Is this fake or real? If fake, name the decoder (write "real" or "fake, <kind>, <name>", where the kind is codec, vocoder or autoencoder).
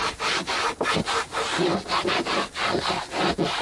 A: real